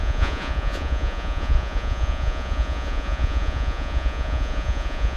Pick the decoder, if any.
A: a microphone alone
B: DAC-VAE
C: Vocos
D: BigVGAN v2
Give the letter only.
C